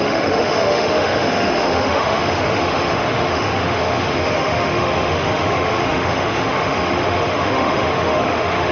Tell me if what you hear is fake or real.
fake